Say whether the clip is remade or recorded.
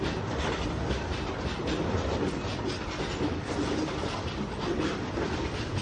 recorded